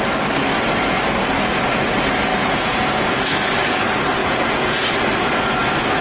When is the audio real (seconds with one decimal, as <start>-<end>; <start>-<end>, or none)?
0.0-2.3; 3.3-4.2; 4.9-6.0

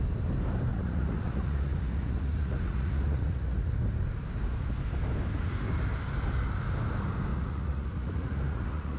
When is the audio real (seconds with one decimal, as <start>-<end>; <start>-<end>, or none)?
0.0-0.7; 3.7-7.3

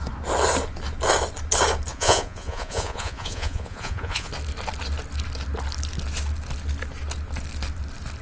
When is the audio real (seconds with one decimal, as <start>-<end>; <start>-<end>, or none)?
0.0-1.9; 4.3-8.2

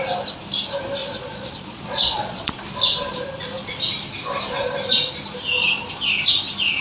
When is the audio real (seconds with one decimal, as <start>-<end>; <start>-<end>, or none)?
0.0-1.0; 2.5-6.8

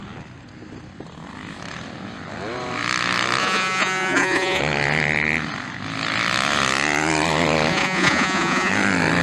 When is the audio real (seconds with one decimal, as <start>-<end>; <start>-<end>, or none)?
0.0-3.4; 4.6-7.7; 8.7-9.2

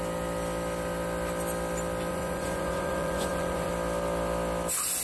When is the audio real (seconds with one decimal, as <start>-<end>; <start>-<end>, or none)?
0.0-2.1; 3.7-5.0

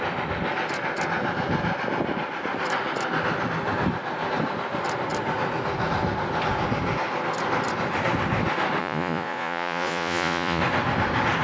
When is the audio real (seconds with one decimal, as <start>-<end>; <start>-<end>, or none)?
0.0-8.8; 10.6-11.4